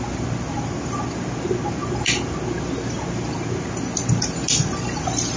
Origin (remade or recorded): recorded